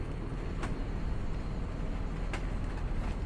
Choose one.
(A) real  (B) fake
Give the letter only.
A